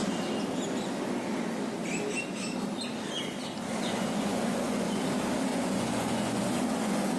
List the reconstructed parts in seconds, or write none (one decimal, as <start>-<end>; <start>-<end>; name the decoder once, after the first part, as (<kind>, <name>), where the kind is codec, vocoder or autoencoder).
3.7-5.0 (vocoder, Vocos); 5.5-7.2

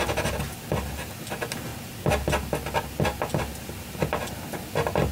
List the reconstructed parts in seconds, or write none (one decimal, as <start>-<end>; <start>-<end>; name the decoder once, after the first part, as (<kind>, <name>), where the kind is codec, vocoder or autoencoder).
none

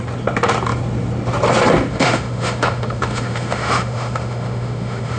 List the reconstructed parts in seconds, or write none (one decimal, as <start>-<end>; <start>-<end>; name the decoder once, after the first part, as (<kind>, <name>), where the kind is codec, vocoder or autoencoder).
1.9-5.2 (autoencoder, DAC-VAE)

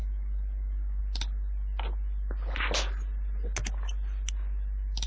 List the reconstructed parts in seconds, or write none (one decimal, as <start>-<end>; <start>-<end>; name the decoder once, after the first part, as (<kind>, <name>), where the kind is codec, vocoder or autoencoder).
0.0-1.0 (codec, DAC)

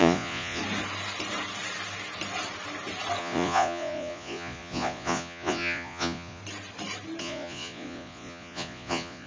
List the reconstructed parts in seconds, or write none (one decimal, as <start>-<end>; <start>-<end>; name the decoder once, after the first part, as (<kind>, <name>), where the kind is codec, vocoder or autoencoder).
0.0-0.6 (vocoder, Vocos); 3.2-6.4; 7.2-9.3

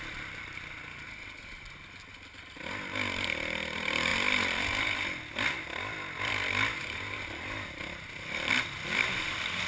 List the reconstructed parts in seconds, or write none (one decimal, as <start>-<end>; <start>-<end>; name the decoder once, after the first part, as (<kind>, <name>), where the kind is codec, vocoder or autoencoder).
none